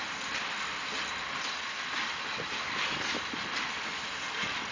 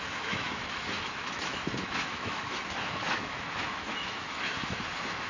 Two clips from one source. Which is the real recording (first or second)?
first